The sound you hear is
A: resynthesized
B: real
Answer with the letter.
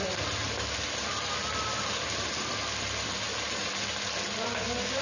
B